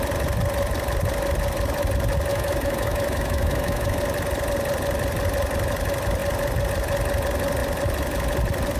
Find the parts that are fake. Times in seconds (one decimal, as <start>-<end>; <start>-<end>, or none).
2.3-4.0